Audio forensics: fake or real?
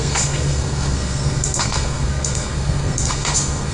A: fake